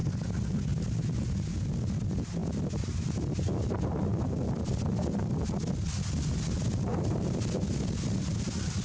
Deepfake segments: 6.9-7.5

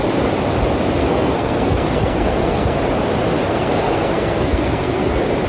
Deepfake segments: 1.0-2.8; 3.4-5.1

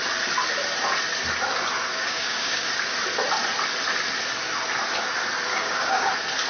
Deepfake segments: 1.9-2.7; 5.5-6.1

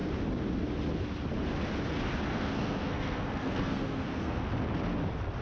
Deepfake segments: 2.3-4.5

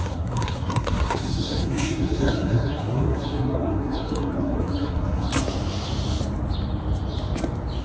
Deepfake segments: 0.0-5.3

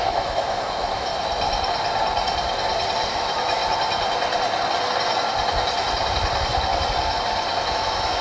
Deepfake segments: 0.0-1.1; 3.1-3.6; 7.7-8.2

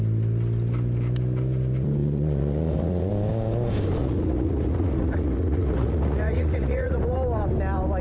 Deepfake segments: 2.0-3.1; 4.0-7.0